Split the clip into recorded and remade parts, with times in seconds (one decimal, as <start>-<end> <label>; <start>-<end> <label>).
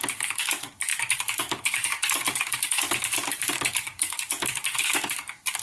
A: 0.0-5.6 remade